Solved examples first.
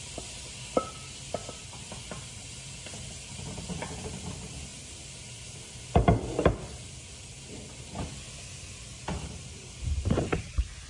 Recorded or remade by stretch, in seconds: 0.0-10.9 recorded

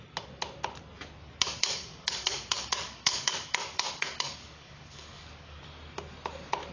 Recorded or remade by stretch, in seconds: 0.0-1.6 recorded; 1.6-5.6 remade; 5.6-6.7 recorded

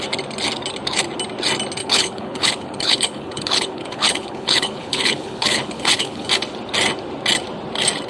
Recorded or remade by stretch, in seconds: 0.0-1.8 recorded; 1.8-6.3 remade; 6.3-8.1 recorded

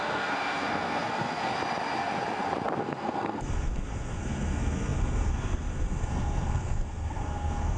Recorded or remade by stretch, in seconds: 0.0-1.5 remade; 1.5-2.8 recorded; 2.8-7.8 remade

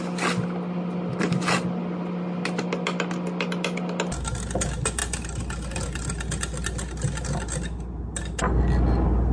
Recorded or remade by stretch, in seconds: 0.0-9.3 recorded